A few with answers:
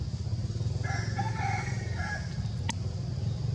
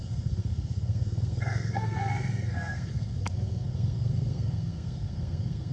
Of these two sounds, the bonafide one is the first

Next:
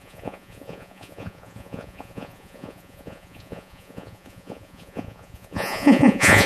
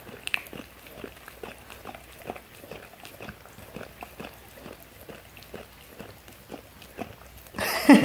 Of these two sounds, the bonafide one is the second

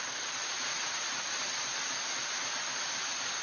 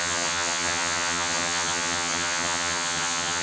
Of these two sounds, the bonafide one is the first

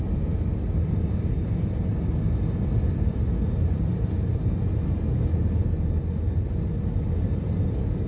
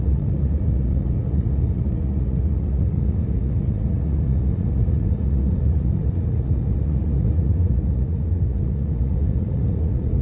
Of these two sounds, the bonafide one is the first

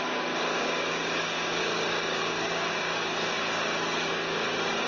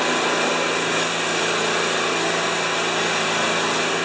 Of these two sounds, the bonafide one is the second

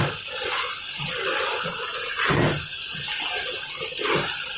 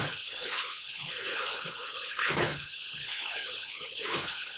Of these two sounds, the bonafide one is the first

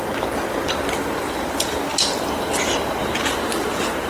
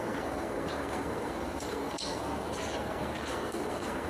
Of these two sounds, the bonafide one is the first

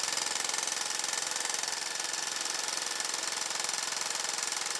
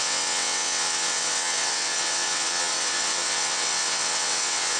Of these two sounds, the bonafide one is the first